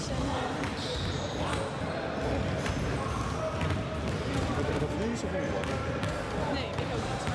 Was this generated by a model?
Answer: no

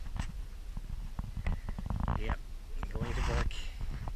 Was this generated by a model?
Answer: no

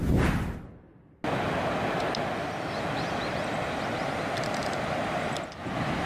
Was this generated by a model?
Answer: no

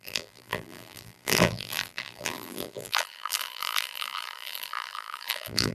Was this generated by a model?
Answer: yes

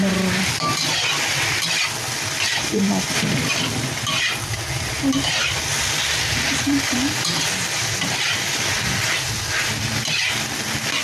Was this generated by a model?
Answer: yes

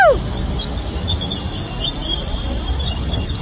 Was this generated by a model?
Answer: no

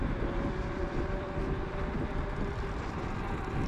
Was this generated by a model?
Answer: yes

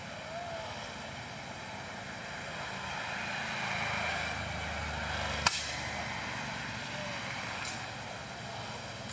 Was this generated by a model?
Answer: no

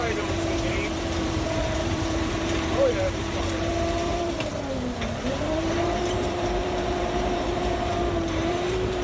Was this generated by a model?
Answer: yes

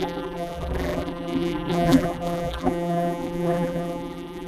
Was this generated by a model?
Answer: yes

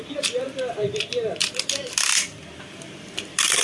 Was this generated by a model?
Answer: yes